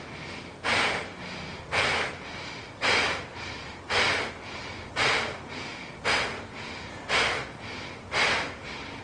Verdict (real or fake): real